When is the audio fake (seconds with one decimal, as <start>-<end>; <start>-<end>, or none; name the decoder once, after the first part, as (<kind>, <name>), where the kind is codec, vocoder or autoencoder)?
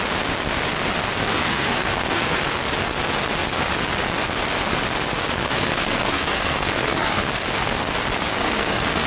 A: 1.3-2.4 (codec, SNAC); 5.5-7.2; 8.4-9.1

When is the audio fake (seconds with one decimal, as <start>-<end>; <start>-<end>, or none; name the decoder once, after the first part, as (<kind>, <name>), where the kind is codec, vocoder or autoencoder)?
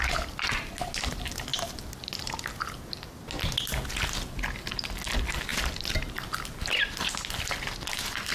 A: none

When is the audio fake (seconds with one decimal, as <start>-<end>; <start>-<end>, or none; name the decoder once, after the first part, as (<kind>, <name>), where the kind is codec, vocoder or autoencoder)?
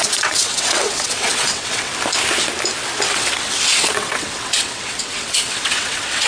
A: 0.0-1.9 (vocoder, WaveNeXt); 3.1-6.3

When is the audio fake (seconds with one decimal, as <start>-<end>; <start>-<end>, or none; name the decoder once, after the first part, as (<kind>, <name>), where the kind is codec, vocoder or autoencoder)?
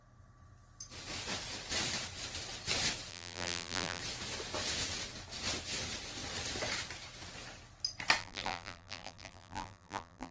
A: 3.1-4.0 (vocoder, BigVGAN v2); 8.2-10.3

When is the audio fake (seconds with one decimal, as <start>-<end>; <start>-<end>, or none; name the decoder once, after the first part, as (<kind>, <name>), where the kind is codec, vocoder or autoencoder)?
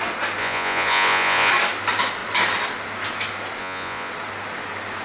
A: 0.4-1.5 (vocoder, Vocos); 3.6-4.1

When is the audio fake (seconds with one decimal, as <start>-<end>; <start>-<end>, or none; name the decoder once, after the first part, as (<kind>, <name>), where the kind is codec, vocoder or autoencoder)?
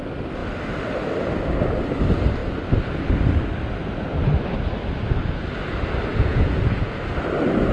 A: 6.1-7.0 (vocoder, Vocos)